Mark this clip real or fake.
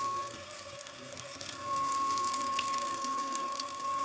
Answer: fake